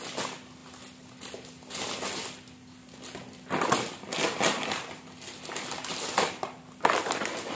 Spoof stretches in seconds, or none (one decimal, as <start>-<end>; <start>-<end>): none